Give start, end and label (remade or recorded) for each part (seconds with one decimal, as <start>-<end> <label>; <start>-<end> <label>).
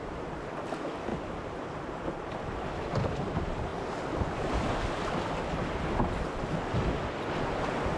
0.0-1.1 remade; 1.1-2.9 recorded; 2.9-8.0 remade